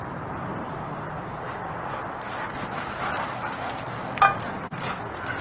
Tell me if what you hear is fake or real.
fake